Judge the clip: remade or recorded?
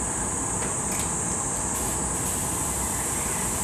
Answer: remade